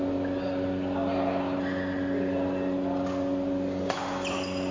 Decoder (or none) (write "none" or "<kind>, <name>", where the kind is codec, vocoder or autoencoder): none